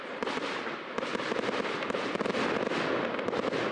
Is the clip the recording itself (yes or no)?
yes